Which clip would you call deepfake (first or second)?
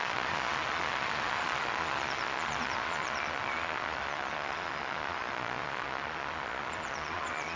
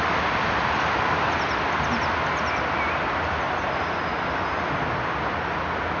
first